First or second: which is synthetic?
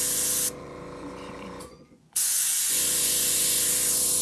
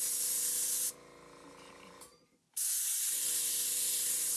first